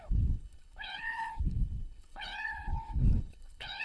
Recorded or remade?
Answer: remade